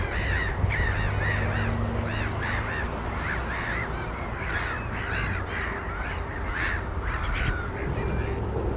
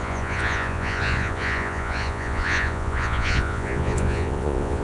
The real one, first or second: first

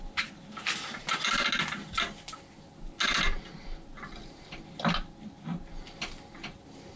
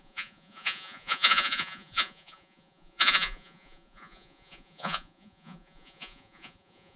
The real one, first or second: first